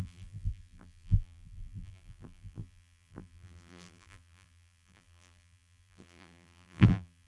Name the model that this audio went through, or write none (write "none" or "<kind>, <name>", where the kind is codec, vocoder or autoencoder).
vocoder, BigVGAN v2